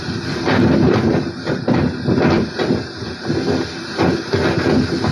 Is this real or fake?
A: real